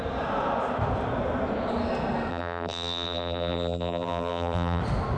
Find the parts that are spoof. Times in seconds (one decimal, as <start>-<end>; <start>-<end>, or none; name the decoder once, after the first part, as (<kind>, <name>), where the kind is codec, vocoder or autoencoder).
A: 2.3-4.8 (vocoder, BigVGAN v2)

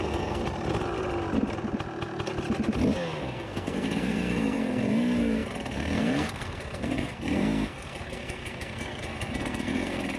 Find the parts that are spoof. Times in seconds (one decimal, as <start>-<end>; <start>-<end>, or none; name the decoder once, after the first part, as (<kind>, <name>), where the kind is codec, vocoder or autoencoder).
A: 0.0-0.4 (codec, SNAC); 3.2-10.2

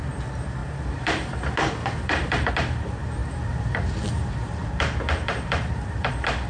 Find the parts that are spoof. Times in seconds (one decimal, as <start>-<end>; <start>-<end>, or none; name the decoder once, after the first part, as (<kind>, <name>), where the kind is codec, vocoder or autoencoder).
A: 0.6-1.4 (vocoder, BigVGAN v2); 1.8-2.5; 3.2-6.1